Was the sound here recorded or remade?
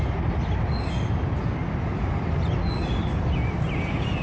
recorded